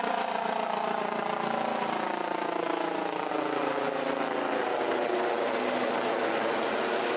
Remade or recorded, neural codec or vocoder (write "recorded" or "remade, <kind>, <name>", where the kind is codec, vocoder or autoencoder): recorded